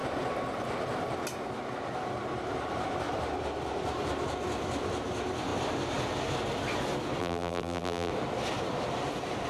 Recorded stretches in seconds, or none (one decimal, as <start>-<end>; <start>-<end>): 0.0-7.2; 8.1-9.5